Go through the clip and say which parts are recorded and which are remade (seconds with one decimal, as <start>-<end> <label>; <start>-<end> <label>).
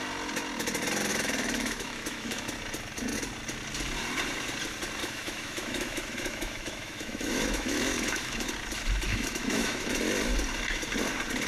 0.0-1.1 recorded; 1.1-2.5 remade; 2.5-5.0 recorded; 5.0-8.5 remade; 8.5-9.1 recorded; 9.1-10.0 remade; 10.0-11.5 recorded